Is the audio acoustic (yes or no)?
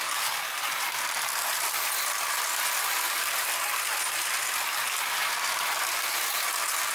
yes